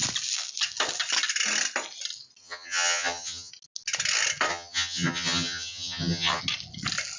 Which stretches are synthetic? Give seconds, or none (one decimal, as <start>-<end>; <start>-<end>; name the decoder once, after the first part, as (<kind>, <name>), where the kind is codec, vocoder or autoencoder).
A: 2.4-3.5 (vocoder, HiFi-GAN); 4.5-6.4